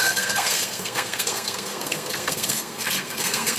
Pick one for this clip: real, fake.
fake